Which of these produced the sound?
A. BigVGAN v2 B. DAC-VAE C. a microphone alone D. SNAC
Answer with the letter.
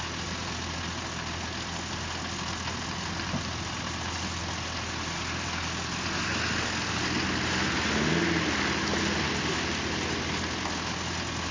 C